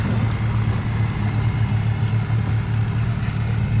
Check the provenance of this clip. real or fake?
real